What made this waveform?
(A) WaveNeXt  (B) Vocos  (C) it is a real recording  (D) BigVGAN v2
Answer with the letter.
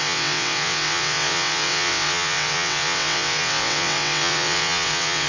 A